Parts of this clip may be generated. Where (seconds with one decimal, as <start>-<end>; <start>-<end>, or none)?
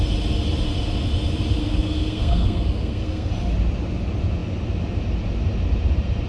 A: 1.6-3.3